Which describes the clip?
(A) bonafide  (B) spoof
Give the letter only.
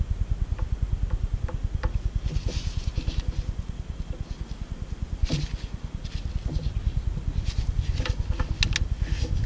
A